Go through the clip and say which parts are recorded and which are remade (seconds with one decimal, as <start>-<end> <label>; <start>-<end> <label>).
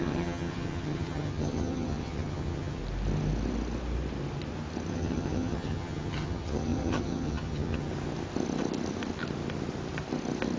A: 0.0-2.8 remade; 2.8-4.9 recorded; 4.9-7.9 remade; 7.9-10.6 recorded